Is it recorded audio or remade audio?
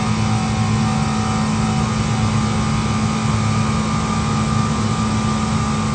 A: recorded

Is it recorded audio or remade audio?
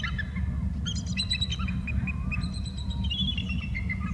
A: recorded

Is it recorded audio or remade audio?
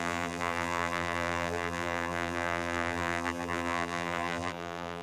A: remade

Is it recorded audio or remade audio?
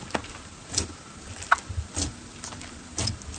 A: recorded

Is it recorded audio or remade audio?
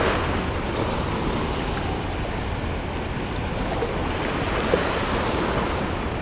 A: recorded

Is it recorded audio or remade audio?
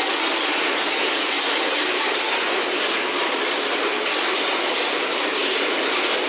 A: recorded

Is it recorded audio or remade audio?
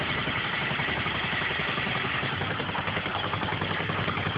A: remade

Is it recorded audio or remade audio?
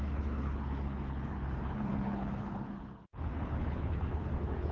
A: remade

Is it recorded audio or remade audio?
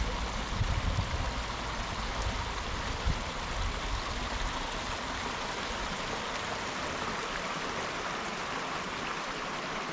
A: recorded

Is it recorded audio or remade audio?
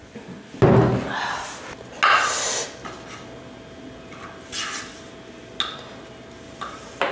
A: recorded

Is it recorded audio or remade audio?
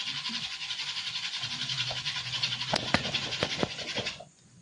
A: remade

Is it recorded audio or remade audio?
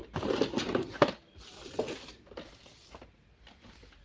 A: recorded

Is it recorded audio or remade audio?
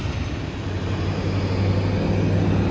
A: recorded